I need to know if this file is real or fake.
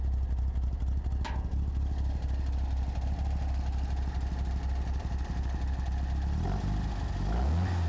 real